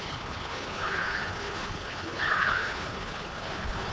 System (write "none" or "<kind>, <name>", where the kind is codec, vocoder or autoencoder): codec, HILCodec